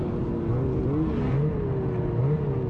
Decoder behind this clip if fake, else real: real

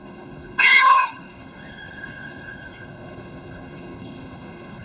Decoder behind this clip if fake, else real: fake, codec, HILCodec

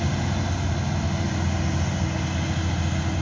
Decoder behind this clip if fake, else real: real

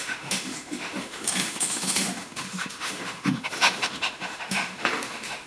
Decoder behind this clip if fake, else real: fake, autoencoder, DAC-VAE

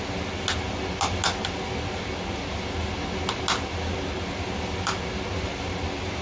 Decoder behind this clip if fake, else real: real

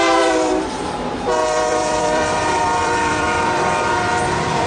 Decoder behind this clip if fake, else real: fake, vocoder, BigVGAN v2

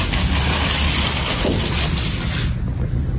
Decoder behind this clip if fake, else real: real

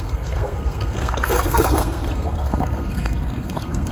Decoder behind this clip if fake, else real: fake, codec, SNAC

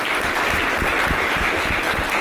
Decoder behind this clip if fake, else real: real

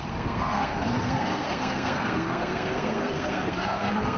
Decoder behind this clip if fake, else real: fake, codec, SNAC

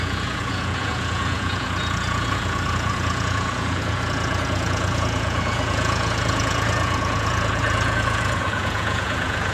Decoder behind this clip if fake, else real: fake, vocoder, Vocos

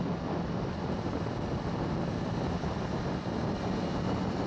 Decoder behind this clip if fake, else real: real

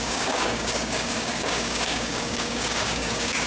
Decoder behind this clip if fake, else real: fake, codec, DAC